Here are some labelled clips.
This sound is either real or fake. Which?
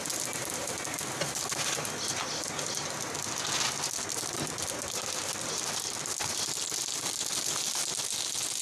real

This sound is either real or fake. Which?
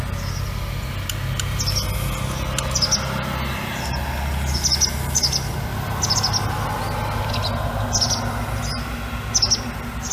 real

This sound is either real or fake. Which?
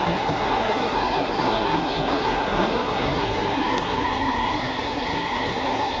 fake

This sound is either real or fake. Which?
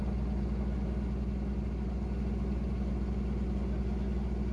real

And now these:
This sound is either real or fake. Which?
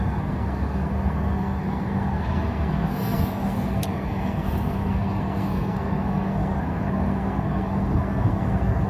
fake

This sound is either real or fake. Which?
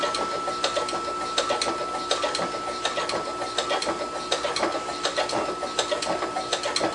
real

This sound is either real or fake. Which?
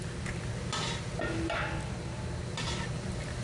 real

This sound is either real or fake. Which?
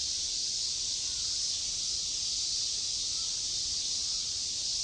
real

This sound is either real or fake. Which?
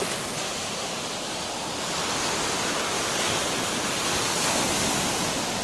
real